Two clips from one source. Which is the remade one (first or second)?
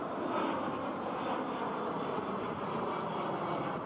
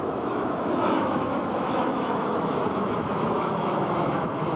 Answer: second